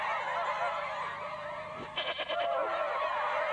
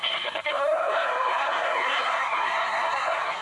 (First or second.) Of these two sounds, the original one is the first